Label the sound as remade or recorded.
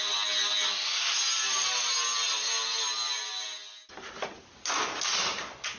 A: recorded